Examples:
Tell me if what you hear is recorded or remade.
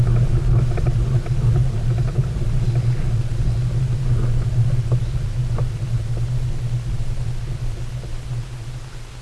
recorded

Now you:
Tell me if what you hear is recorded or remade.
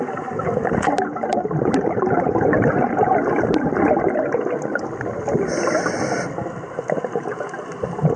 recorded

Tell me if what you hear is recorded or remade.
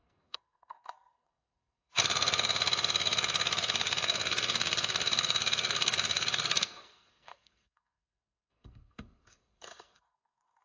remade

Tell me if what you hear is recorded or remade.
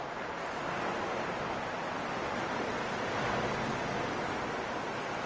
recorded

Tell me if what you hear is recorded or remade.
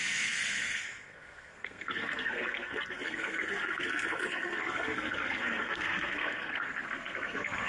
remade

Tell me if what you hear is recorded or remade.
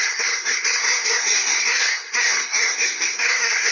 remade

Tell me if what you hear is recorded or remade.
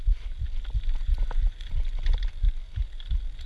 recorded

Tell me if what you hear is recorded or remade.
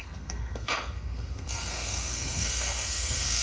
remade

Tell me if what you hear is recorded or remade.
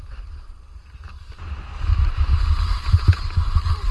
recorded